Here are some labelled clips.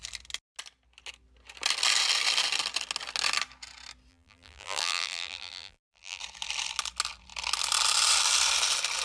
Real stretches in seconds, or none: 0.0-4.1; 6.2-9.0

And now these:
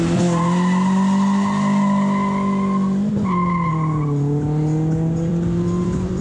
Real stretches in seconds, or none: 0.0-5.3

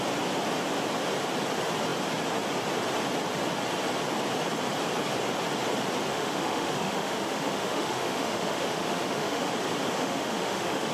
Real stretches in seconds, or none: 0.0-6.1; 9.5-10.0

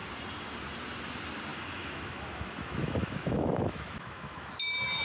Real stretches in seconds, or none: 0.0-1.5; 4.5-5.0

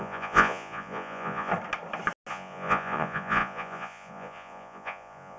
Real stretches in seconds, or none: 1.5-2.3